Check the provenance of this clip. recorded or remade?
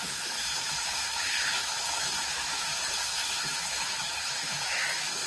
remade